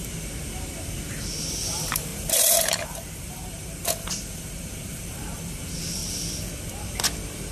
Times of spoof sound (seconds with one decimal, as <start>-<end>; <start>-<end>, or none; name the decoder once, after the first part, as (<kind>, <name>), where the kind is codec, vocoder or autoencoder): 1.7-6.0 (vocoder, BigVGAN v2)